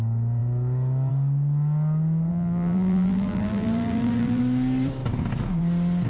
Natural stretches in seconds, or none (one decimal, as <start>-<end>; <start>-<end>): 0.0-2.3; 4.4-6.1